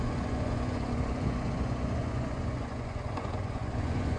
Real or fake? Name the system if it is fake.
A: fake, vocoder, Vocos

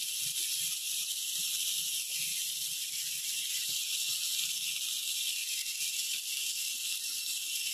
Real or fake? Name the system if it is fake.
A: real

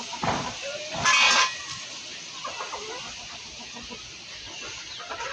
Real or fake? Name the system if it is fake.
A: real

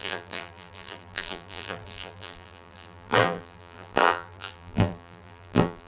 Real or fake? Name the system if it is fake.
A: fake, vocoder, BigVGAN v2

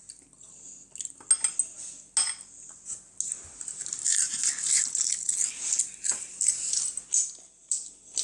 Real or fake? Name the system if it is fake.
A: real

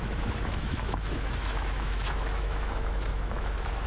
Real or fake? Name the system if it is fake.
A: fake, autoencoder, DAC-VAE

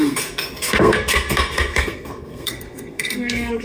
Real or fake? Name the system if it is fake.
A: fake, codec, SNAC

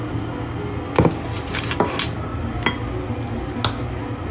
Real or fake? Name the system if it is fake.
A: real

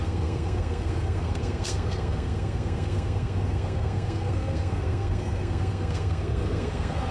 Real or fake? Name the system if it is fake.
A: fake, codec, SNAC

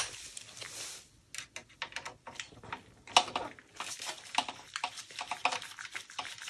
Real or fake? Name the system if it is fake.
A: real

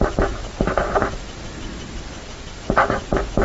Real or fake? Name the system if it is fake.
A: real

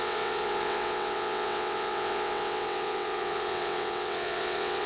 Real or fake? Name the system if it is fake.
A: fake, vocoder, WaveNeXt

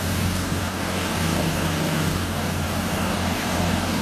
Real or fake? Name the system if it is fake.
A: fake, codec, DAC